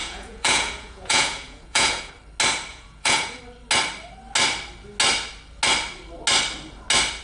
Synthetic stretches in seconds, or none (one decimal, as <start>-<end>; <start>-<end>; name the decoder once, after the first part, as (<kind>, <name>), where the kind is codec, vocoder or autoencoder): 0.0-2.1 (vocoder, Vocos); 2.7-3.4